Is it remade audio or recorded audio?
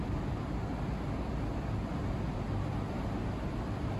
recorded